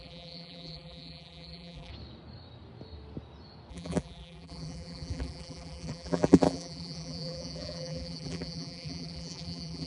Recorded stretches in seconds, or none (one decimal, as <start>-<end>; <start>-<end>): 1.9-3.7